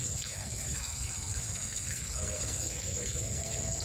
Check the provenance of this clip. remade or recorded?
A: remade